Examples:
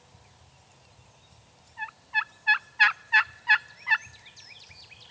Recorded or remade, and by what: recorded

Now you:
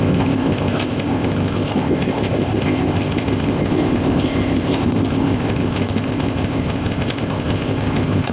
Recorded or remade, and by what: remade, codec, ZipCodec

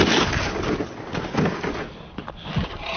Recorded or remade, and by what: recorded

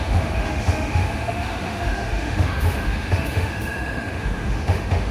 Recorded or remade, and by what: remade, autoencoder, DAC-VAE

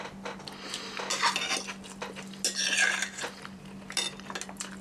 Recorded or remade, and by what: recorded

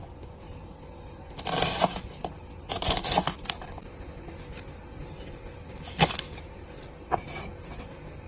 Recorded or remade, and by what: recorded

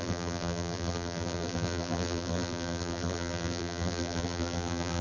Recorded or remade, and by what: remade, vocoder, BigVGAN v2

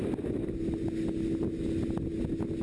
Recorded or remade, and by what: recorded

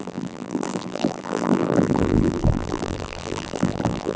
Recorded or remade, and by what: remade, vocoder, BigVGAN v2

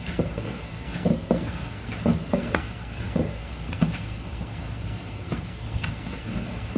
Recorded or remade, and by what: remade, codec, SNAC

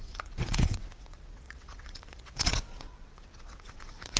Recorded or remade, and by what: remade, vocoder, WaveNeXt